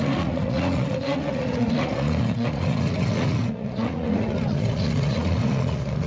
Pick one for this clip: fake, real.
fake